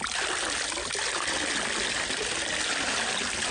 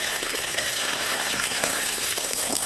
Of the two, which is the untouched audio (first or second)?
first